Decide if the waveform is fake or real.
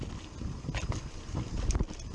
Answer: real